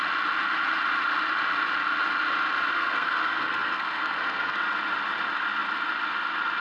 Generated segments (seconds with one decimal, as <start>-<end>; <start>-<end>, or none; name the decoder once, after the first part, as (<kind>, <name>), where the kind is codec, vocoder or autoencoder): 2.7-4.6 (codec, SNAC)